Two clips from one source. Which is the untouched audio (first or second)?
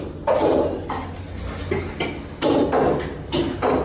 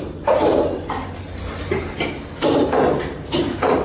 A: first